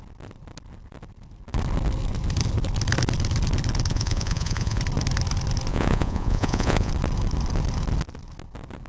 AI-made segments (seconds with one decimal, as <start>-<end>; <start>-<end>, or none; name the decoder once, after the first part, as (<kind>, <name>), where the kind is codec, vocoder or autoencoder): 3.9-4.8 (vocoder, Vocos); 5.7-6.9

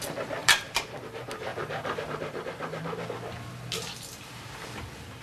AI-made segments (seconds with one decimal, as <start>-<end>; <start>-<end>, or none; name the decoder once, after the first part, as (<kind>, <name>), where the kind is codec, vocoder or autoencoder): 0.4-0.9 (vocoder, BigVGAN v2); 1.5-2.8

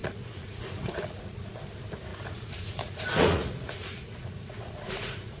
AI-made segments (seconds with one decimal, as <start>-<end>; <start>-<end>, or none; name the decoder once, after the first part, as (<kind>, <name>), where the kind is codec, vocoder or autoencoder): 0.0-1.6 (vocoder, Vocos); 2.1-5.4

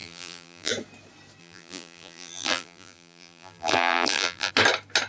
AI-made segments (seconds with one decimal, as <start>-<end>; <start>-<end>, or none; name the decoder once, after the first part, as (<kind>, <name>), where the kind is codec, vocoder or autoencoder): 0.0-0.7 (vocoder, BigVGAN v2); 1.4-4.5

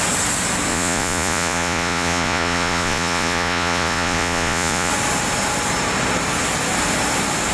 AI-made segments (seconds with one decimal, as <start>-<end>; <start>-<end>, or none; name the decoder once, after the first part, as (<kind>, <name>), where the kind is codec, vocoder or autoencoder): 0.7-4.9 (vocoder, Vocos)

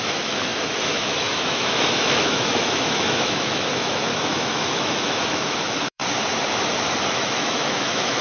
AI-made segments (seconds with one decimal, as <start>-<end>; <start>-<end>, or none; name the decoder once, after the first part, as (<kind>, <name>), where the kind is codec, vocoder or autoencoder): 0.0-6.0 (autoencoder, DAC-VAE); 7.1-8.2

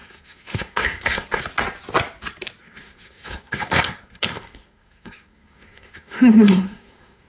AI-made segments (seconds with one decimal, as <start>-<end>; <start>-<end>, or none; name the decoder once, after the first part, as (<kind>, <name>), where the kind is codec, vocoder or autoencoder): 0.0-1.4 (codec, SNAC); 2.6-7.3